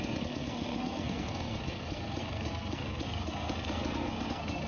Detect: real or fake fake